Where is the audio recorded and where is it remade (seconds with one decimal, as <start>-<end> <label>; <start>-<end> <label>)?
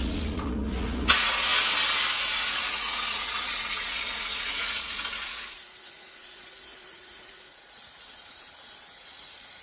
0.0-1.5 remade; 1.5-2.2 recorded; 2.2-9.6 remade